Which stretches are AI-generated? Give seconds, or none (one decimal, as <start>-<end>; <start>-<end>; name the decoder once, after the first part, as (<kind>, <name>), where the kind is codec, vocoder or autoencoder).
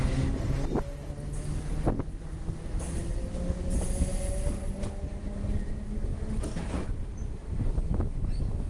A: none